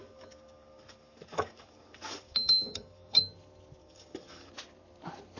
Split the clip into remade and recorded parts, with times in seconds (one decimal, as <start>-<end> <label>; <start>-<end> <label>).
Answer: 0.0-3.2 remade; 3.2-3.8 recorded; 3.8-4.5 remade; 4.5-5.4 recorded